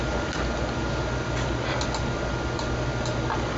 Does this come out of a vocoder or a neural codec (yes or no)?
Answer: no